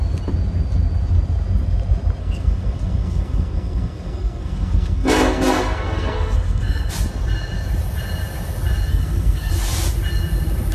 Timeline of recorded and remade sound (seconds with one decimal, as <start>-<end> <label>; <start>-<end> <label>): 0.0-2.2 recorded; 2.2-6.9 remade; 6.9-8.9 recorded; 8.9-9.5 remade; 9.5-10.7 recorded

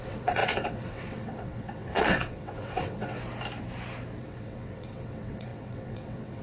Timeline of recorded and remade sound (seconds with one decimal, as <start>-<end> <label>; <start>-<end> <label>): 0.0-3.2 remade; 3.2-4.2 recorded; 4.2-6.4 remade

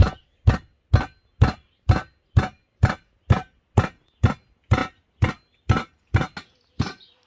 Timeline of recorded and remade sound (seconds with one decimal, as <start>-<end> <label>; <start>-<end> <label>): 0.0-7.3 recorded

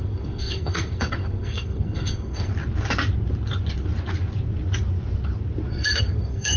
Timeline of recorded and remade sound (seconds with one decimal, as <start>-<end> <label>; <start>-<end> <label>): 0.0-2.5 remade; 2.5-5.7 recorded; 5.7-6.6 remade